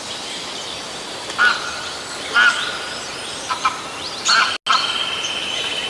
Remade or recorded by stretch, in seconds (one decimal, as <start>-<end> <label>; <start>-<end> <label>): 0.0-5.9 recorded